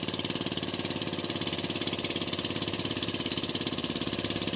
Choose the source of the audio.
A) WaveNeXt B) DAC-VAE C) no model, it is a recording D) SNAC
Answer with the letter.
C